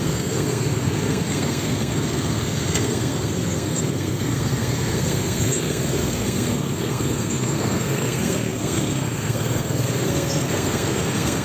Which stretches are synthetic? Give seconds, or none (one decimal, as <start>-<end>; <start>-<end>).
0.0-11.4